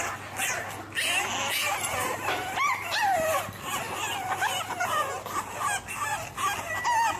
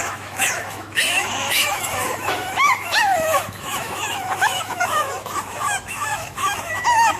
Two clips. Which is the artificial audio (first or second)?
second